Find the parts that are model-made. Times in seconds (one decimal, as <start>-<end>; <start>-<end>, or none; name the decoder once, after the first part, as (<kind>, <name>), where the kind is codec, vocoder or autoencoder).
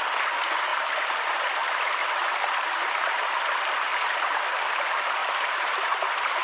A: 0.7-1.9 (vocoder, BigVGAN v2); 3.9-4.4; 5.2-5.9